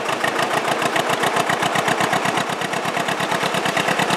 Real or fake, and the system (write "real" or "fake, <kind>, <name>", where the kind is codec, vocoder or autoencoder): real